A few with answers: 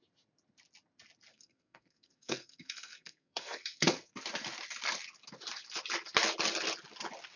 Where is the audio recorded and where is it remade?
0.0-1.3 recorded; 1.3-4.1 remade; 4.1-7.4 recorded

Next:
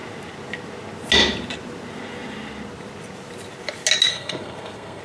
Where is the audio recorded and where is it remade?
0.0-4.1 recorded; 4.1-5.0 remade

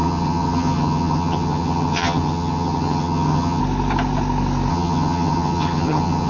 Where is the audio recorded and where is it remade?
0.0-3.6 remade; 3.6-4.7 recorded; 4.7-6.3 remade

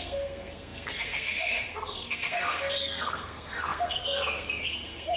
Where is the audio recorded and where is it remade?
0.0-5.2 remade

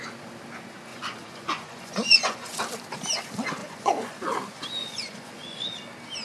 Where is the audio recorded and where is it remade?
0.0-0.9 recorded; 0.9-2.6 remade; 2.6-3.6 recorded; 3.6-4.2 remade; 4.2-4.8 recorded; 4.8-5.7 remade; 5.7-6.2 recorded

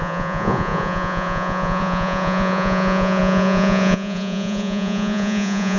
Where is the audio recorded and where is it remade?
0.0-5.8 remade

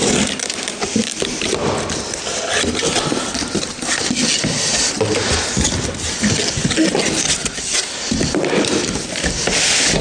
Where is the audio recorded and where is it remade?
0.0-10.0 recorded